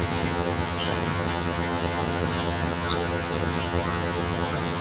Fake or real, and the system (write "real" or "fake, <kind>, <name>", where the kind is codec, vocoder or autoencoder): fake, vocoder, HiFi-GAN